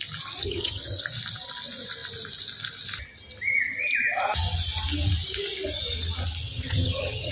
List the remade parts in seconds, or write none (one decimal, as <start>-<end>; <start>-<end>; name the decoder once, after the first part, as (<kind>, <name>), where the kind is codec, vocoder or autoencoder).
0.4-1.0 (vocoder, HiFi-GAN); 6.4-7.3

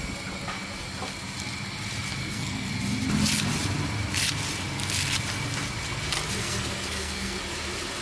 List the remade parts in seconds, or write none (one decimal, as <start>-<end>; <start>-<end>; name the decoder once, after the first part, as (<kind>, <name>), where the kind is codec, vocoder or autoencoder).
2.2-2.7 (codec, SNAC); 6.4-7.4

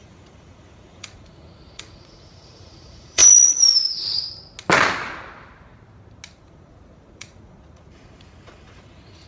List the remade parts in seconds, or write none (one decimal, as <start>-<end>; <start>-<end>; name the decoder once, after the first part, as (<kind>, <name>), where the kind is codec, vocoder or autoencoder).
0.0-3.2 (vocoder, Vocos); 6.4-9.3

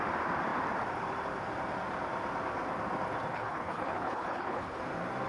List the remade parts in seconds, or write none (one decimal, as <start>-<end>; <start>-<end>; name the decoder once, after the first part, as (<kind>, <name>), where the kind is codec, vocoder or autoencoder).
3.3-4.8 (codec, HILCodec)

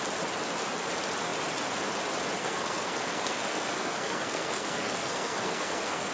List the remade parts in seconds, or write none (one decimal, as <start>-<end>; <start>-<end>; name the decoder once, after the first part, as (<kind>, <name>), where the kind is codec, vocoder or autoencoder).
2.4-6.1 (codec, SNAC)

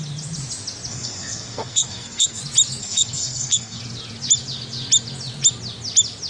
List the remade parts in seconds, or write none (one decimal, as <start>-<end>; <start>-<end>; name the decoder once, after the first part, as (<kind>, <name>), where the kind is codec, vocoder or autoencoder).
0.9-2.4 (codec, SNAC); 2.8-3.8

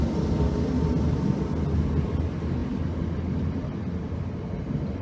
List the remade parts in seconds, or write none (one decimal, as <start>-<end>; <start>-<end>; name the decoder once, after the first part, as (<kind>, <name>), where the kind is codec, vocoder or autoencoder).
none

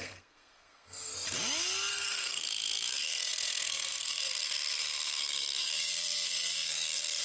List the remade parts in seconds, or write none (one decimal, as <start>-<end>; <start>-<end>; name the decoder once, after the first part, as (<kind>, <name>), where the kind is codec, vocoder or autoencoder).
0.0-1.1 (codec, SNAC); 1.9-7.2